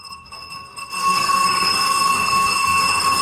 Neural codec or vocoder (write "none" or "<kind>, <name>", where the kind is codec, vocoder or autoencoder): codec, SNAC